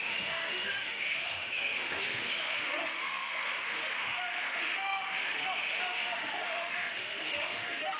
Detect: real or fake fake